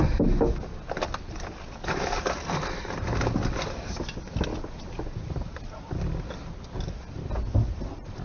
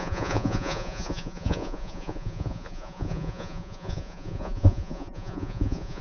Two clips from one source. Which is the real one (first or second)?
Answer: first